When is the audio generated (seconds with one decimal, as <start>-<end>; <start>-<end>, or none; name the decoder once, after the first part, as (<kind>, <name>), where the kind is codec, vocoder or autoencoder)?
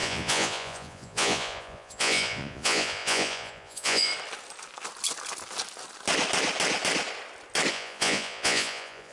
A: 0.0-4.1 (vocoder, Vocos); 7.7-9.1